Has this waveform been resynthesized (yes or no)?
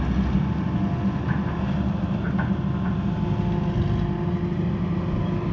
no